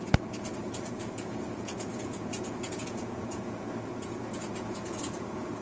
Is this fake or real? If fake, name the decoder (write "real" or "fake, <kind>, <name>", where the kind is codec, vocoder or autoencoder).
fake, vocoder, Vocos